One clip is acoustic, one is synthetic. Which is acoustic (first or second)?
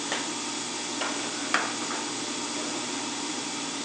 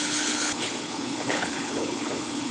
first